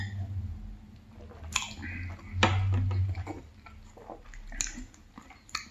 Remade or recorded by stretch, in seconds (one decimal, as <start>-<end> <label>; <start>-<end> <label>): 0.0-5.7 recorded